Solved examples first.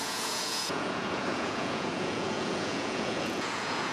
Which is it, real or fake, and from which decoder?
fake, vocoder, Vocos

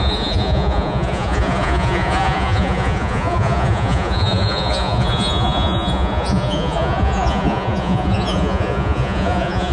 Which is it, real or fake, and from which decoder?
fake, vocoder, Vocos